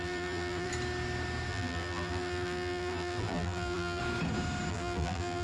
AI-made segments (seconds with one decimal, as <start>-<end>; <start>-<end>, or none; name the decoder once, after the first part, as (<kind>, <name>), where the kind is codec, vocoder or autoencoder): 0.0-0.7 (vocoder, BigVGAN v2); 1.5-4.0; 4.7-5.4